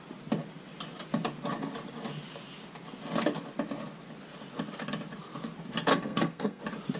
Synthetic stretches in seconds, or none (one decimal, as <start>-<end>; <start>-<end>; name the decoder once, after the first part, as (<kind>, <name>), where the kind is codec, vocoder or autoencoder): 5.9-6.6 (codec, SNAC)